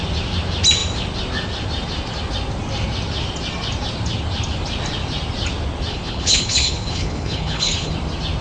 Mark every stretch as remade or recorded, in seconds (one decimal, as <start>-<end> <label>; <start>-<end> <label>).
0.0-5.9 recorded; 5.9-7.9 remade; 7.9-8.4 recorded